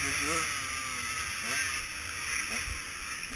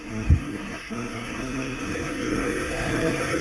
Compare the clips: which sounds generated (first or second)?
second